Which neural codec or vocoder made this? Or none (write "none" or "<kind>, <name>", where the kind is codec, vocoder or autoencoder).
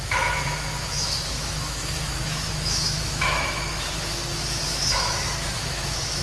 autoencoder, DAC-VAE